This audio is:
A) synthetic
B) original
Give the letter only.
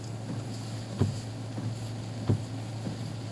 B